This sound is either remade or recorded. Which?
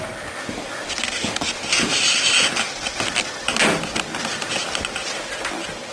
recorded